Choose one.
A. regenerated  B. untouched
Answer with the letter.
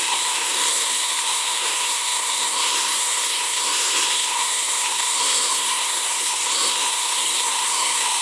A